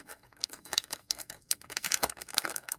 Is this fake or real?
fake